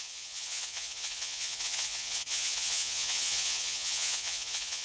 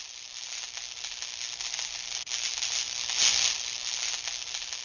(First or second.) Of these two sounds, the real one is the second